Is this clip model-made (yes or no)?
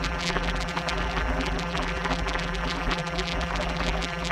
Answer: yes